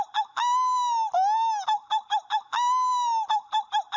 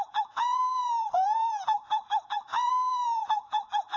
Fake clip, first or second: second